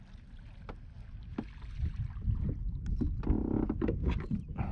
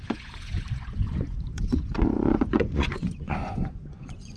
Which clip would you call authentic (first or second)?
first